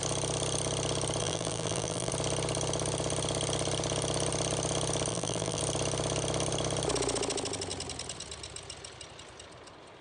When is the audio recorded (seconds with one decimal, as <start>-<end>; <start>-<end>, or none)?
0.0-1.2; 2.1-5.1; 5.6-10.0

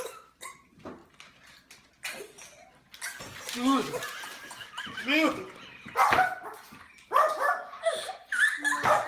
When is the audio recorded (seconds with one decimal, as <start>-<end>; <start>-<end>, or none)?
0.0-9.1

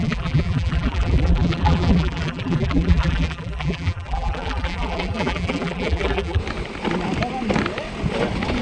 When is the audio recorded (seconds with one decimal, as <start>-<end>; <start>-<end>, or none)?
6.4-8.6

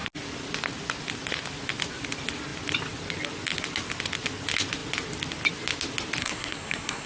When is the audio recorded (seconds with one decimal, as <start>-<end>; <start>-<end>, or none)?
0.0-6.2